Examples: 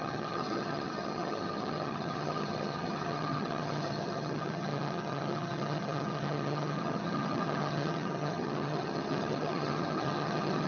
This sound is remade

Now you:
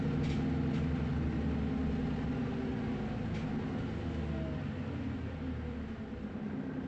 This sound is recorded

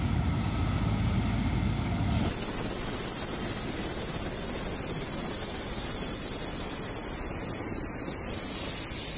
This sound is recorded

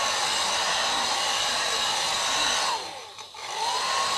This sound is recorded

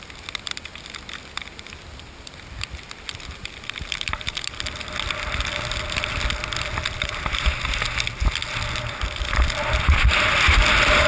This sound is recorded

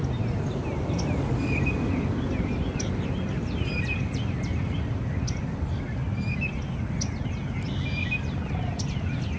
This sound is recorded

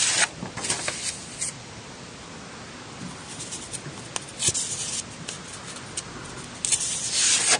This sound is recorded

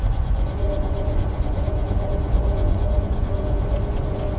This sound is remade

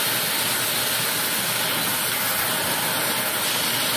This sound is recorded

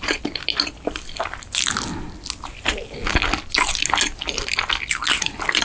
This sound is recorded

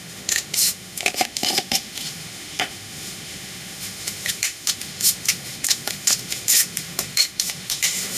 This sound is remade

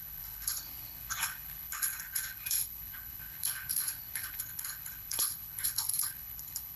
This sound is remade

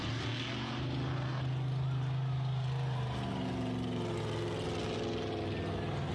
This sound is recorded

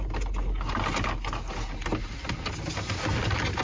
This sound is recorded